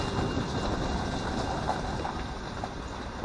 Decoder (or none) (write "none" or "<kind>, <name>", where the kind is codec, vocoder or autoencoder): none